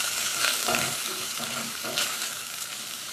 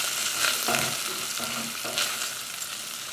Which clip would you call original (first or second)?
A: second